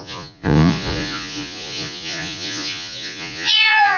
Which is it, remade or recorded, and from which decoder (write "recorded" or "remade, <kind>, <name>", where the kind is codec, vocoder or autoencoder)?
remade, vocoder, Vocos